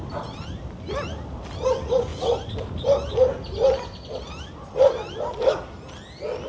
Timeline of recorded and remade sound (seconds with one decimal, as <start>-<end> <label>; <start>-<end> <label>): 0.0-6.5 recorded